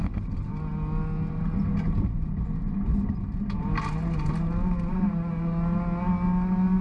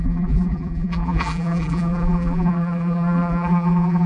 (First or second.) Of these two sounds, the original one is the first